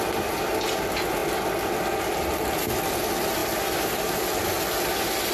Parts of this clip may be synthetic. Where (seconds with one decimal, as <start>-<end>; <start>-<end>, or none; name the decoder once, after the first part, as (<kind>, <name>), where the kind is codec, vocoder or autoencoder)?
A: none